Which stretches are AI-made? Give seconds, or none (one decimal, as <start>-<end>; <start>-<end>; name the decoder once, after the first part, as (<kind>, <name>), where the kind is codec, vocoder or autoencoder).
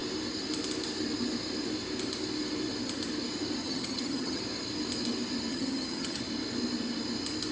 3.6-4.4 (vocoder, HiFi-GAN); 5.5-6.2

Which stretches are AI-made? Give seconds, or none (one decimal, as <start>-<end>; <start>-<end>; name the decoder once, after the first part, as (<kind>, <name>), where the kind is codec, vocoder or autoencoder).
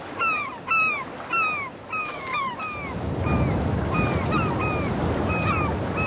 2.0-2.5 (codec, DAC)